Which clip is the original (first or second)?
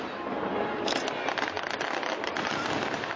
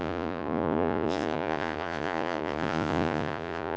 first